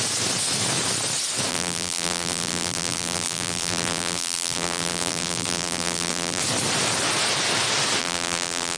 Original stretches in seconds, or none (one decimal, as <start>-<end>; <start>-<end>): 0.0-1.5; 6.4-8.0